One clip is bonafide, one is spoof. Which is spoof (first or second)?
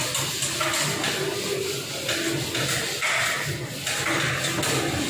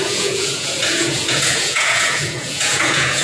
second